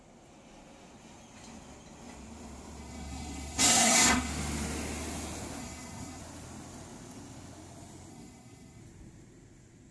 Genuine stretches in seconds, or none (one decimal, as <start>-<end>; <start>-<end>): 0.0-2.8; 4.3-5.6; 6.2-8.1; 8.8-9.9